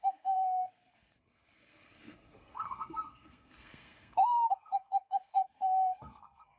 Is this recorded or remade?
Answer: remade